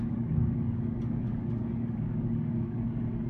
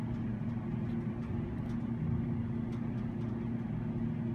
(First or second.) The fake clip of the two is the first